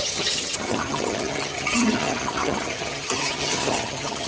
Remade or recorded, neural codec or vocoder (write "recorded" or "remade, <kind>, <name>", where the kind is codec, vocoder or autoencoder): remade, vocoder, HiFi-GAN